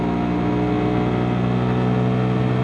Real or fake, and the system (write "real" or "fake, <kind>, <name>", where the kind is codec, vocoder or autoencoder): real